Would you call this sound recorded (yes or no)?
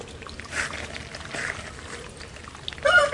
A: yes